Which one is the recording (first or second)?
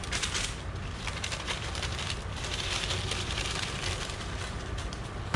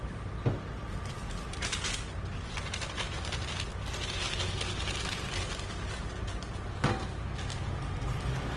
second